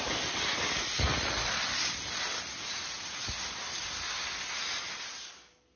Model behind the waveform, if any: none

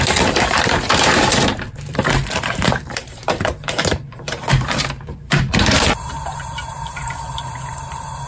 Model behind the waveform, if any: vocoder, BigVGAN v2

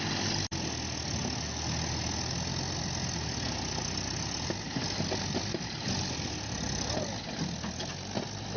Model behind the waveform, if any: none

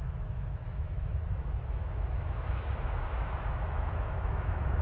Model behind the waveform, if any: autoencoder, DAC-VAE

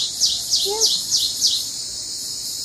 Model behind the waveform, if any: none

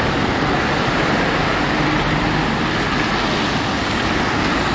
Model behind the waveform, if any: none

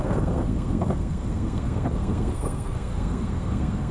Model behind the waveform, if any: codec, SNAC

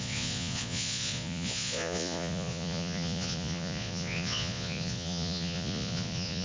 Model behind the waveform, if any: vocoder, Vocos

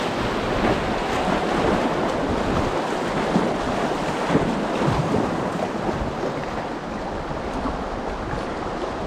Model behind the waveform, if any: none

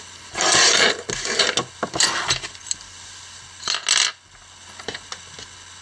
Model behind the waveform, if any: none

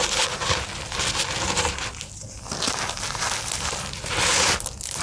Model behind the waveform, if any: vocoder, BigVGAN v2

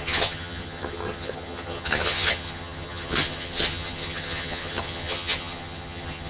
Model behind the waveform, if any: vocoder, HiFi-GAN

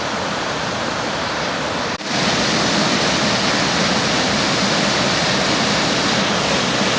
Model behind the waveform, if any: none